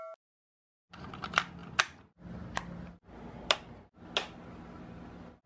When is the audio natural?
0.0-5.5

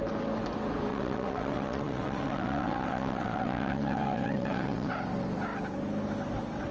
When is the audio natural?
0.0-0.9; 4.9-6.7